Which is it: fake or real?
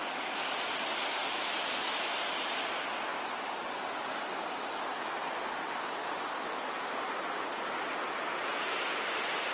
real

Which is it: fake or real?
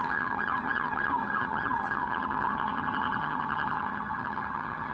fake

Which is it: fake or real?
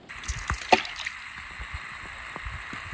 real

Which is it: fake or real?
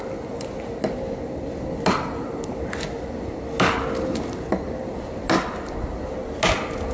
real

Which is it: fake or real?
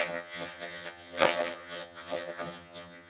fake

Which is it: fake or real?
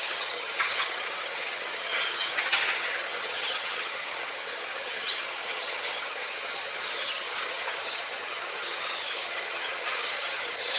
fake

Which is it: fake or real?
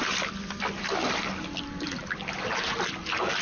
real